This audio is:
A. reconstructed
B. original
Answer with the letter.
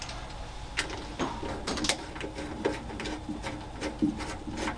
B